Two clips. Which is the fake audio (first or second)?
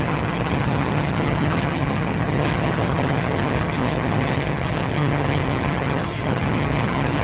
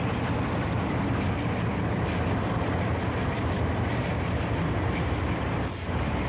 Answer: first